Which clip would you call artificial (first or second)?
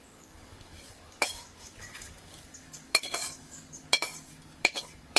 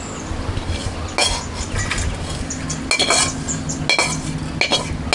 first